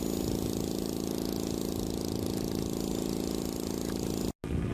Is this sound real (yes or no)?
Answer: yes